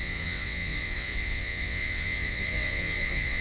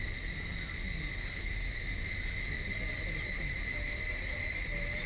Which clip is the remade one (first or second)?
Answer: first